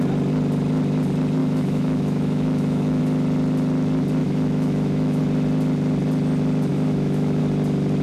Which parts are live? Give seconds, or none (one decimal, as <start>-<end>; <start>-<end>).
0.0-1.4; 3.0-4.2; 5.2-6.7; 7.4-8.0